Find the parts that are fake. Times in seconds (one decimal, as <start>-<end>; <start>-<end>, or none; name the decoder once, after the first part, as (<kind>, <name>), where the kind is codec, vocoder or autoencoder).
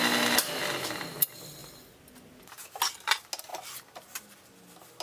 none